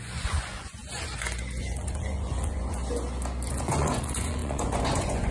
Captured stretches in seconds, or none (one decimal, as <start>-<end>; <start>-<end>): 2.8-3.5

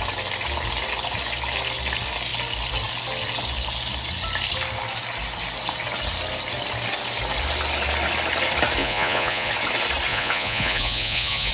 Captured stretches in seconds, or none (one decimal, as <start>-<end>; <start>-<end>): 0.0-8.8; 9.5-10.1

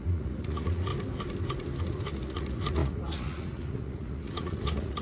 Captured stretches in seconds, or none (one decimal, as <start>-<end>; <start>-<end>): 0.9-1.8